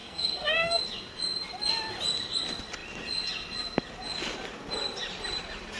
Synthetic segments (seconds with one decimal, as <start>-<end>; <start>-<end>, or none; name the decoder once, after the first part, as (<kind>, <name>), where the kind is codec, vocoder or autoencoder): 0.0-0.8 (codec, SNAC)